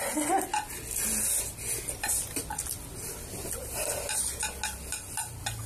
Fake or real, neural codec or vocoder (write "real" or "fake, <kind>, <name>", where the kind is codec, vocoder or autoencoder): real